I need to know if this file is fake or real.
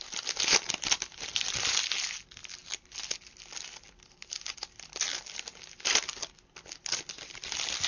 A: real